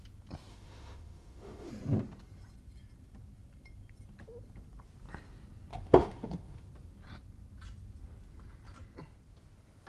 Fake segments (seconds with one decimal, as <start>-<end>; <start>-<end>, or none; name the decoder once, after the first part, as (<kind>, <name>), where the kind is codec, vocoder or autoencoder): 0.5-1.7 (autoencoder, DAC-VAE); 5.7-6.7